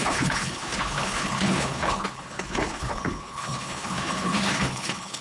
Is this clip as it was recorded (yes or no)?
no